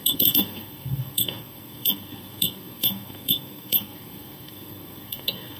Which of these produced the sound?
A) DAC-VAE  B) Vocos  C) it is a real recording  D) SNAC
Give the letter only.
D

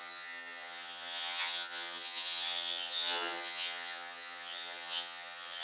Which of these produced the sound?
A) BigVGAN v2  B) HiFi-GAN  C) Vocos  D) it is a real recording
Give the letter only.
B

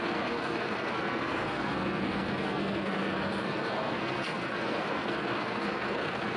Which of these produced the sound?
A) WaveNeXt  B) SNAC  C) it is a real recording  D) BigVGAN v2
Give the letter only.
B